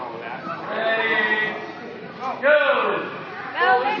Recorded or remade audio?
recorded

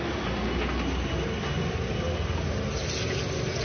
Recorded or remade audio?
recorded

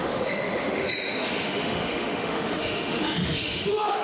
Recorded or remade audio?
remade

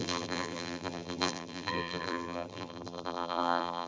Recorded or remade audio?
remade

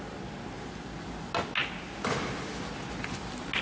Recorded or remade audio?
recorded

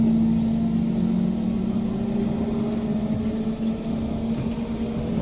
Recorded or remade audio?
recorded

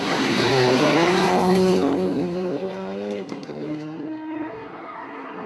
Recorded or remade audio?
remade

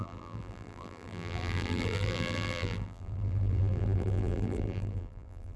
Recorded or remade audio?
remade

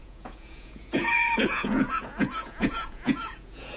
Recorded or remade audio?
remade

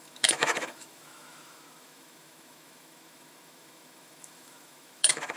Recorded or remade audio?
remade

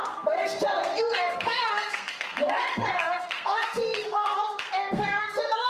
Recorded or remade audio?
remade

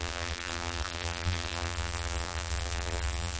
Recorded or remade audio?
remade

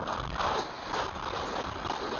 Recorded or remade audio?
recorded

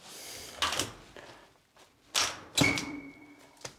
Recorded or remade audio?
recorded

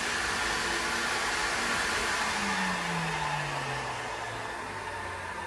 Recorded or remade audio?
recorded